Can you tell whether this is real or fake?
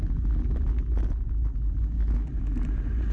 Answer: real